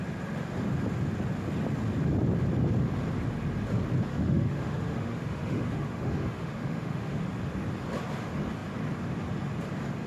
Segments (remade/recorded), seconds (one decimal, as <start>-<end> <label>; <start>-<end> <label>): 0.0-4.1 recorded; 4.1-7.2 remade; 7.2-10.1 recorded